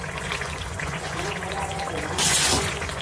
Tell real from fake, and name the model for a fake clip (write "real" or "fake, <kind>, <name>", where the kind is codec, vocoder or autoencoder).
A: fake, vocoder, Vocos